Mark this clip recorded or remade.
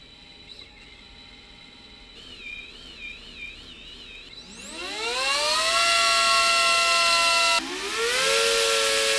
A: recorded